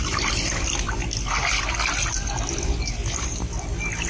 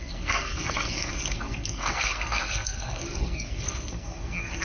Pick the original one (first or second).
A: first